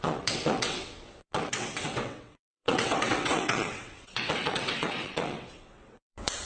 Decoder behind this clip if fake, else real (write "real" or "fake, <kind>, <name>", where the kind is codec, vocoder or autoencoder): fake, vocoder, WaveNeXt